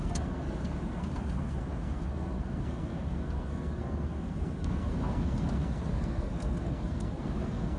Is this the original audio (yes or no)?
no